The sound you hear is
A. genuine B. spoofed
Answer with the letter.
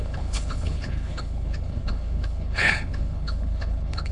B